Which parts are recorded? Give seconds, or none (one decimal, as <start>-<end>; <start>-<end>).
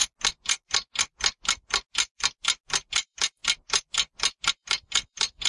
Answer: 0.0-2.9; 3.4-4.5